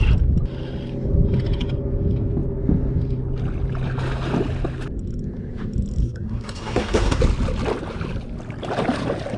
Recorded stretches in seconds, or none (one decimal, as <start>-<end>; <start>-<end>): 0.0-6.0; 7.2-9.4